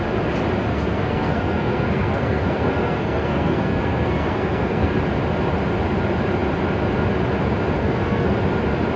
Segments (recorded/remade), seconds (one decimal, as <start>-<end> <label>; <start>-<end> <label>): 0.0-0.7 recorded; 0.7-4.9 remade; 4.9-7.8 recorded; 7.8-8.3 remade; 8.3-9.0 recorded